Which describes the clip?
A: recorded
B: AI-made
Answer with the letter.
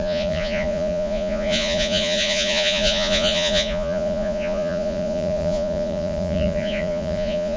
B